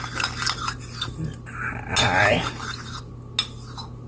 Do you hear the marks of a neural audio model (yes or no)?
no